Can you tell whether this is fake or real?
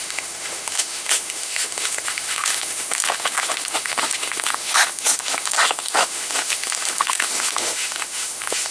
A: fake